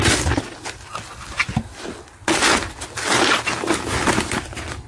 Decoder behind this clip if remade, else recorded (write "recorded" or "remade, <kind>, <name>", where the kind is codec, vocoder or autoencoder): recorded